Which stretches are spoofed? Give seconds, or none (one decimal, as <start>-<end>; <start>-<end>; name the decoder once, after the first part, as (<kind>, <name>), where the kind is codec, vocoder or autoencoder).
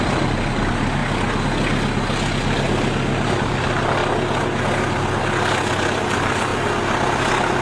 0.0-1.0 (vocoder, BigVGAN v2); 3.3-4.0; 6.1-6.5